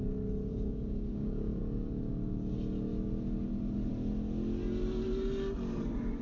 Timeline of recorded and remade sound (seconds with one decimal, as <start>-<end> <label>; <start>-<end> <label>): 0.0-0.5 recorded; 0.5-1.6 remade; 1.6-6.2 recorded